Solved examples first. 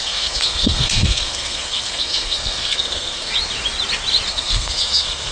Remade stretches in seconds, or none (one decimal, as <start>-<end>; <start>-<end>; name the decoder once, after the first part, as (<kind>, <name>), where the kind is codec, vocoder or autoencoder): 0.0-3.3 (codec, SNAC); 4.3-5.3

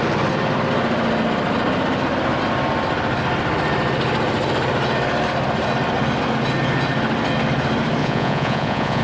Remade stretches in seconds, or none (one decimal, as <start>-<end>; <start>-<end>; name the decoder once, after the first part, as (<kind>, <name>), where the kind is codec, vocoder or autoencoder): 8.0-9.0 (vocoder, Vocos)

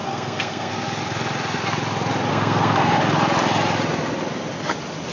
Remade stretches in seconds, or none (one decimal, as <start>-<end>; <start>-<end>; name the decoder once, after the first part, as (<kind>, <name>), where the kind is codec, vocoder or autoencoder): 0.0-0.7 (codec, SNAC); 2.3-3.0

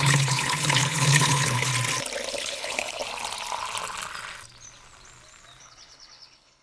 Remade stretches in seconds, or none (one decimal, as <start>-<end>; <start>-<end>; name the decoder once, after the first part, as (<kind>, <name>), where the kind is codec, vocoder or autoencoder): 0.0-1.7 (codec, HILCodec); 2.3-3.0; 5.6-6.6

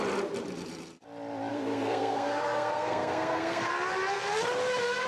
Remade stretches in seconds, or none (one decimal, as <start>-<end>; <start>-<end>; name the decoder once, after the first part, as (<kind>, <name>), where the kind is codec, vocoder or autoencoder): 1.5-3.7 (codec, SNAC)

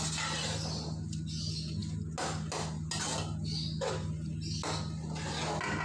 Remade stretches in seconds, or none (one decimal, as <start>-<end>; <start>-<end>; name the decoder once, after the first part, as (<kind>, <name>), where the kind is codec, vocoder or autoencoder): none

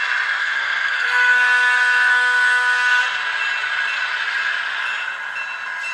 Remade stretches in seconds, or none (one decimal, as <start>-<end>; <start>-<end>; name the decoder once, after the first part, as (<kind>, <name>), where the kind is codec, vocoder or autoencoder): 0.4-3.0 (codec, SNAC)

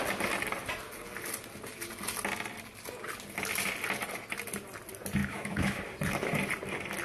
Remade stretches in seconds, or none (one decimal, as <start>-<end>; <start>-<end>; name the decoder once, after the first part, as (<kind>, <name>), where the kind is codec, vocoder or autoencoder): 5.2-5.8 (autoencoder, DAC-VAE)